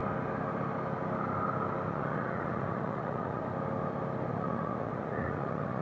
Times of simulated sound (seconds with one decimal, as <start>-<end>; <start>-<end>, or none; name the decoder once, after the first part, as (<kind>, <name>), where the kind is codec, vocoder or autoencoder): 1.9-3.4 (vocoder, Vocos); 4.3-5.8